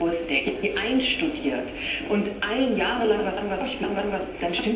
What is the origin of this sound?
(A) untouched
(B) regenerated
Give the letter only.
A